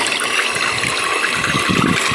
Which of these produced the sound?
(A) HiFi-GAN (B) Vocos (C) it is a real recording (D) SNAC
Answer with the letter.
C